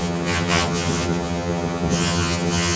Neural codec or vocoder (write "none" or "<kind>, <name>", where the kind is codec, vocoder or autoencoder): vocoder, HiFi-GAN